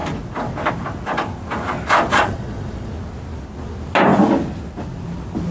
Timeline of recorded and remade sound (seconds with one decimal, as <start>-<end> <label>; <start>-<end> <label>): 0.0-2.1 recorded; 2.1-2.9 remade; 2.9-5.5 recorded